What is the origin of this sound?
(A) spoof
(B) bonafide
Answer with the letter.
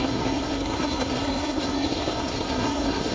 A